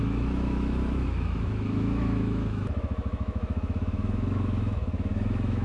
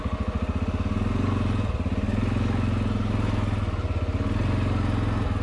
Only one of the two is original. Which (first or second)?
second